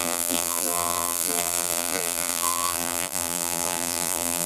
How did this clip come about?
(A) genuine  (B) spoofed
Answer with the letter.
B